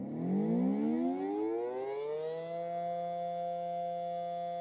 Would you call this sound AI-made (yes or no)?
no